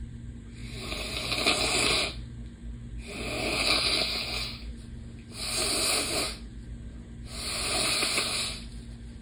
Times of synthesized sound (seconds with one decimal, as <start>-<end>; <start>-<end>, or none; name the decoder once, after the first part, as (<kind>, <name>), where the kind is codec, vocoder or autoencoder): none